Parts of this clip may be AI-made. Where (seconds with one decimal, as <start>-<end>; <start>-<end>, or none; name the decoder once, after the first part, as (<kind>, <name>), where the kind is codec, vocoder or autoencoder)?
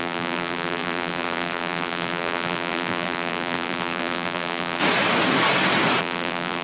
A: 0.0-4.8 (vocoder, BigVGAN v2); 6.0-6.6